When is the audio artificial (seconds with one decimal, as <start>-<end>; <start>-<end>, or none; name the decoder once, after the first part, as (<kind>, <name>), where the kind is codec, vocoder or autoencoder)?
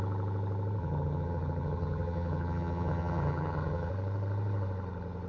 0.8-3.9 (vocoder, HiFi-GAN)